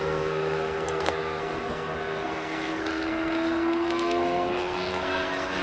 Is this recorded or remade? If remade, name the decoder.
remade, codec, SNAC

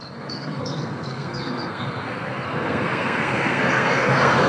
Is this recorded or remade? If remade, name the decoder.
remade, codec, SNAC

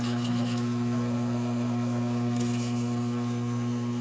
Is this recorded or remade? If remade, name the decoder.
remade, codec, SNAC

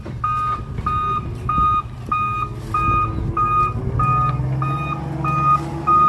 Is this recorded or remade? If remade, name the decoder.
recorded